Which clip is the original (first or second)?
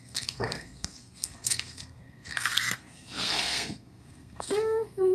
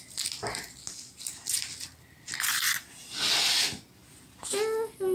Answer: second